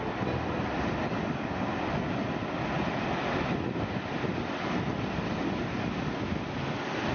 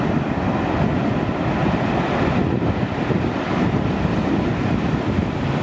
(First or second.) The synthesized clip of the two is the second